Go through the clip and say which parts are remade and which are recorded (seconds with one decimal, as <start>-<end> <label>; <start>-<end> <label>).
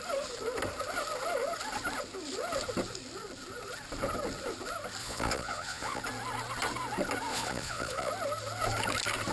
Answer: 0.0-5.0 recorded; 5.0-6.0 remade; 6.0-7.3 recorded; 7.3-8.1 remade; 8.1-9.3 recorded